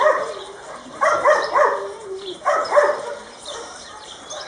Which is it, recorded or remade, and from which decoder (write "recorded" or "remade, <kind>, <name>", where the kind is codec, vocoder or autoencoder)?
remade, vocoder, BigVGAN v2